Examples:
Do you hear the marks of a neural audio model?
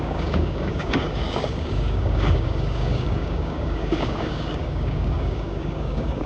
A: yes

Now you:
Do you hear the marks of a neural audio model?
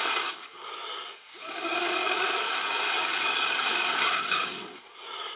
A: yes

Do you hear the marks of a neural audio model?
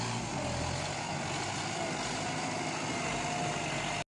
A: no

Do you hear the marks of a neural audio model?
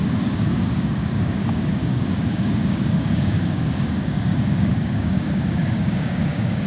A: yes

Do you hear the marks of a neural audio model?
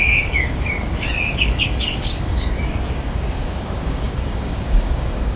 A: yes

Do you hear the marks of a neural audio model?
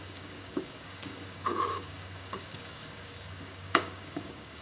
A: yes